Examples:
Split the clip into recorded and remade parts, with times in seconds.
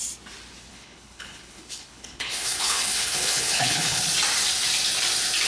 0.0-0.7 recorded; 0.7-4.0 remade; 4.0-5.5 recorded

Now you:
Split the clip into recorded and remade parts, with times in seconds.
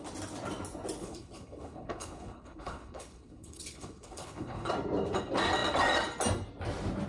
0.0-1.0 recorded; 1.0-4.7 remade; 4.7-7.1 recorded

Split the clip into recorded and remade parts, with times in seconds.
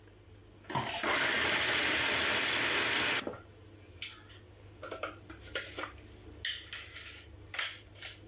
0.0-8.3 recorded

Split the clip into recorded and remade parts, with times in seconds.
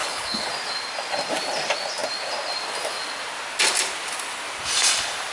0.0-0.5 remade; 0.5-5.3 recorded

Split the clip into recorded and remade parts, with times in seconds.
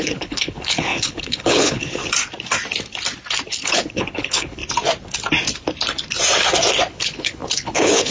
0.0-2.0 remade; 2.0-3.5 recorded; 3.5-4.6 remade; 4.6-6.9 recorded; 6.9-8.1 remade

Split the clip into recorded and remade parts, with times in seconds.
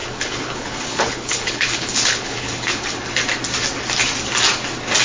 0.0-3.0 remade; 3.0-5.0 recorded